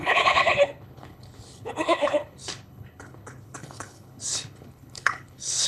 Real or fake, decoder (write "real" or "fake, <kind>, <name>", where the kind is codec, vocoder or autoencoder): fake, codec, HILCodec